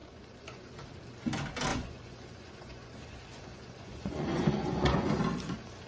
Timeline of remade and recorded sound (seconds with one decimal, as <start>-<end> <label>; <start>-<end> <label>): 0.0-0.7 remade; 0.7-1.7 recorded; 1.7-5.2 remade; 5.2-5.9 recorded